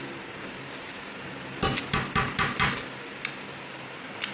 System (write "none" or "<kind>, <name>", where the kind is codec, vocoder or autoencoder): vocoder, BigVGAN v2